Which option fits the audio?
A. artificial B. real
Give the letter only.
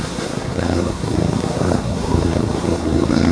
A